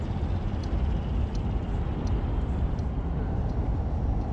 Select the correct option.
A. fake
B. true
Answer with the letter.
B